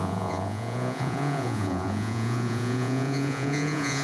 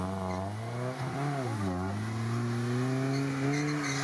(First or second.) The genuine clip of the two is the second